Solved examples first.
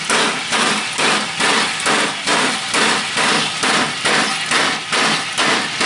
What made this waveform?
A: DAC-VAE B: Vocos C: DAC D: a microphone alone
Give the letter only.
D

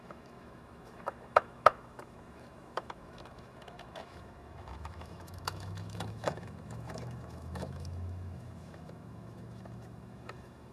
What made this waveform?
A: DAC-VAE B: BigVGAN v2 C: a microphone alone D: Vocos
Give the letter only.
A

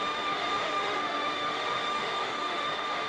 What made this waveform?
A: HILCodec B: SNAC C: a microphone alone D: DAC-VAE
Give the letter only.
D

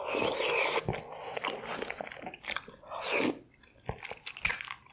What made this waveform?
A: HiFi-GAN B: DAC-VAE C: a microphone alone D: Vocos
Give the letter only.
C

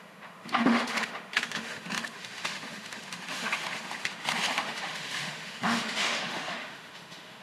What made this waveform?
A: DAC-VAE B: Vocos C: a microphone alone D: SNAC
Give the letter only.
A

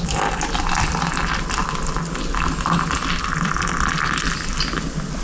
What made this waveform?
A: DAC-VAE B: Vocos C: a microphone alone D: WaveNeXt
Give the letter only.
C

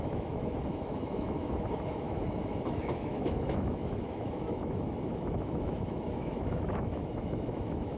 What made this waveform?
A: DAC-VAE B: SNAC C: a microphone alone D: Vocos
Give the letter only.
A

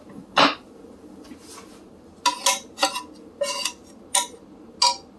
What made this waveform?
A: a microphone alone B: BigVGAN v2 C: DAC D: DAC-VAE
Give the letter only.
A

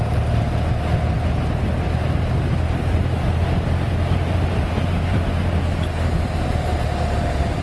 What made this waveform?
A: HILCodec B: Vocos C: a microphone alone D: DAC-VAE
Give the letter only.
C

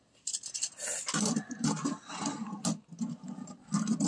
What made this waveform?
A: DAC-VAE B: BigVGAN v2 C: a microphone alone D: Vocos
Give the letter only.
C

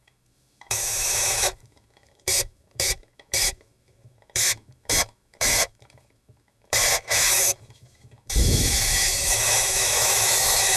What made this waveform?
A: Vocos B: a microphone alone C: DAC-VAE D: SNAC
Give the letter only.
C